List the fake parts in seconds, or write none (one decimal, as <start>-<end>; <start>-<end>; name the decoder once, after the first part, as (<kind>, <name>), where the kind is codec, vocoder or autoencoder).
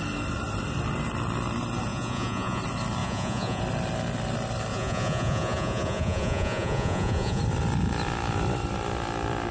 1.9-2.6 (vocoder, Vocos); 3.0-3.6; 4.7-7.4